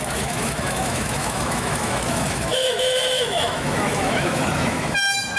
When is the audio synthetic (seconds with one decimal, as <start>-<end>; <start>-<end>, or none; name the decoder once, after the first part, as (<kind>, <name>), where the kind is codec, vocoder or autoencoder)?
0.0-5.4 (autoencoder, DAC-VAE)